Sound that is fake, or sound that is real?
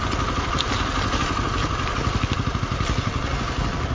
real